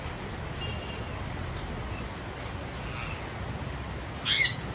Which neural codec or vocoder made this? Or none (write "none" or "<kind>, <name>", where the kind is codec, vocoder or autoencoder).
none